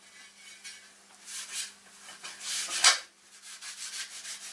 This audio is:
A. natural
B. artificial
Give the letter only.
A